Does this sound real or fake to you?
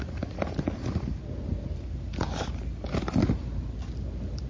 real